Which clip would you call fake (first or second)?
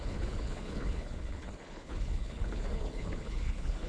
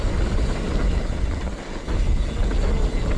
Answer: first